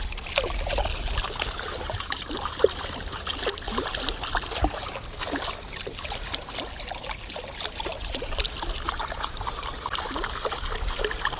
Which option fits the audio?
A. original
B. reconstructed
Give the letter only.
A